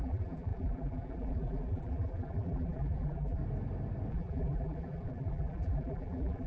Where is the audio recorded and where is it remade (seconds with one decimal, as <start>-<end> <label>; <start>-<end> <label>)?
0.0-3.4 remade; 3.4-4.1 recorded; 4.1-6.5 remade